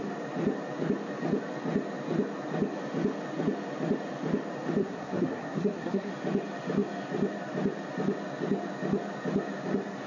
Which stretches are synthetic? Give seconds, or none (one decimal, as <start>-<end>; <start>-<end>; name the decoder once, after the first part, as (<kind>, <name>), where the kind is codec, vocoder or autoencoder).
4.8-6.1 (codec, SNAC)